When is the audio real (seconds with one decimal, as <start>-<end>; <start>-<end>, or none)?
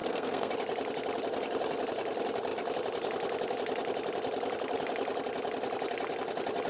0.5-6.7